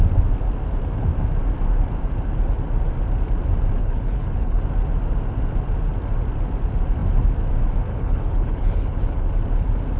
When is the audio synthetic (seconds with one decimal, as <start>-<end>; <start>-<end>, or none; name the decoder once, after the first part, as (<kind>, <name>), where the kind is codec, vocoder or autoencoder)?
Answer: 3.8-4.6 (codec, HILCodec); 7.9-9.3

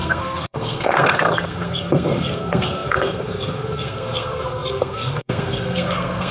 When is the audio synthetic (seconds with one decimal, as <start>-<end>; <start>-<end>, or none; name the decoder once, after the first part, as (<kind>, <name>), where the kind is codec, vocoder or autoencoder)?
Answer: 0.0-6.3 (codec, SNAC)

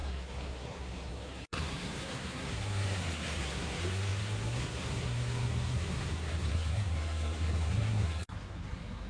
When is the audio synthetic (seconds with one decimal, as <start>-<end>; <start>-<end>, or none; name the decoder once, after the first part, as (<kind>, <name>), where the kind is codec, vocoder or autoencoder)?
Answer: 0.0-9.1 (codec, SNAC)

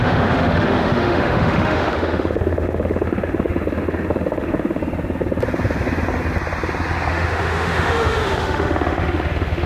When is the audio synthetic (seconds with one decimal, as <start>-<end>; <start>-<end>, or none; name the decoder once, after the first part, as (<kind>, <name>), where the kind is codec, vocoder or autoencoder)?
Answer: 0.0-4.8 (autoencoder, DAC-VAE); 7.1-9.7

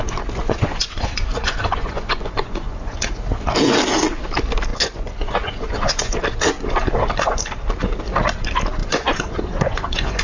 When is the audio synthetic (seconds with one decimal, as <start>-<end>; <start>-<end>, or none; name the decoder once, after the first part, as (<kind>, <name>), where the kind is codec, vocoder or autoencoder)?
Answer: 0.4-3.1 (vocoder, Vocos); 4.7-6.2; 8.8-10.2

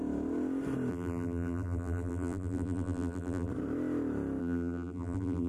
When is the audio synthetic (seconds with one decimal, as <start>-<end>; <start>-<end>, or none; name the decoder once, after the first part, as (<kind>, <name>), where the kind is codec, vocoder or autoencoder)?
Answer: 0.9-3.5 (vocoder, BigVGAN v2); 4.4-5.5

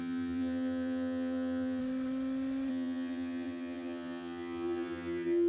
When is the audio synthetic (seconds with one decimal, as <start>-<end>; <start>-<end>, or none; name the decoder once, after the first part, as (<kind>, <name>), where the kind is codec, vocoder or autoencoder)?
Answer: 0.0-1.8 (vocoder, HiFi-GAN); 2.7-5.5

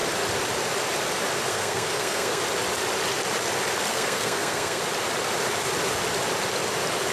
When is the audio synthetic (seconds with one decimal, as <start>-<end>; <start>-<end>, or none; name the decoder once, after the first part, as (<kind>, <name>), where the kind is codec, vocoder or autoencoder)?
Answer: 1.5-2.4 (codec, SNAC); 3.9-4.8